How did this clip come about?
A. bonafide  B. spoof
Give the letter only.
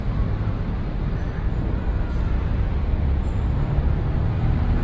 B